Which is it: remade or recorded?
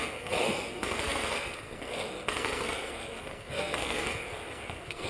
remade